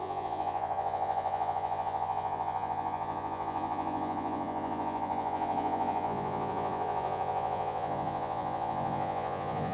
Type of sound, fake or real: fake